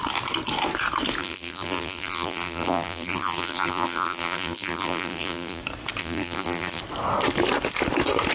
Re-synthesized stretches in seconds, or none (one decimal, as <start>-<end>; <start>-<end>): 1.2-5.6; 6.0-6.8